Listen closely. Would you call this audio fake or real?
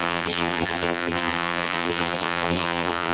fake